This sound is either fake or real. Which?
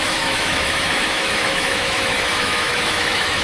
fake